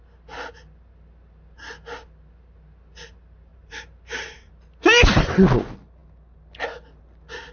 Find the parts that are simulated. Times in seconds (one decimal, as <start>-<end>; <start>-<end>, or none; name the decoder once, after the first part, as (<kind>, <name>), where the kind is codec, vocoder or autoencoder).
3.5-4.5 (vocoder, BigVGAN v2)